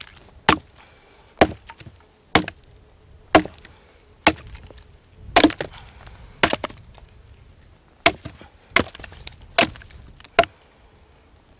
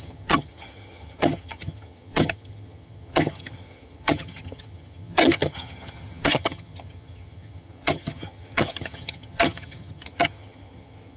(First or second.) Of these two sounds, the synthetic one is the second